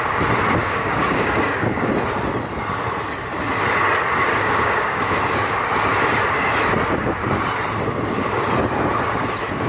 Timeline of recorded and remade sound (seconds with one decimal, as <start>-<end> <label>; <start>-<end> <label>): 0.0-0.6 recorded; 0.6-1.9 remade; 1.9-4.3 recorded; 4.3-5.2 remade; 5.2-9.7 recorded